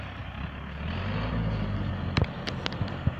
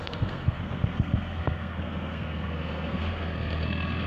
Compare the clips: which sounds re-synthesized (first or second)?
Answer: second